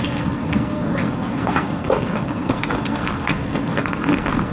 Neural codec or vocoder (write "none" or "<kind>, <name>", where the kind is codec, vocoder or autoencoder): codec, SNAC